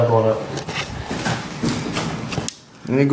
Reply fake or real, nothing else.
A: real